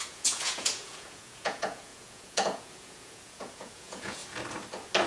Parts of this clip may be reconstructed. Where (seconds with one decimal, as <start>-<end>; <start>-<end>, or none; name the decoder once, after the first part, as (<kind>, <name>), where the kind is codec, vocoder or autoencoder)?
0.0-4.2 (vocoder, Vocos)